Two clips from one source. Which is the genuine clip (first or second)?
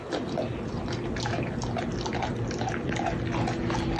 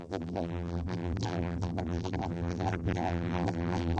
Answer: first